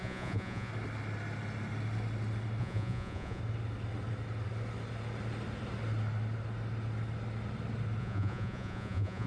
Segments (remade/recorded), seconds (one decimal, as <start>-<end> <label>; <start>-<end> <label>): 0.0-0.7 remade; 0.7-2.6 recorded; 2.6-3.4 remade; 3.4-8.0 recorded; 8.0-9.3 remade